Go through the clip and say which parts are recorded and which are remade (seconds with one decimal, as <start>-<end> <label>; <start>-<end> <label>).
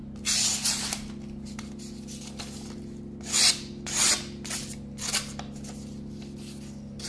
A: 0.0-7.1 recorded